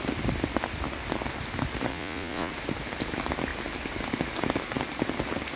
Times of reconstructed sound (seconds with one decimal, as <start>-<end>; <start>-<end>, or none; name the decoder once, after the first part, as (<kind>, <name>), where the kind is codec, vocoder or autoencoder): 1.9-2.5 (vocoder, Vocos)